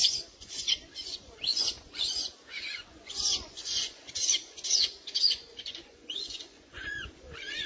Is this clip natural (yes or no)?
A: no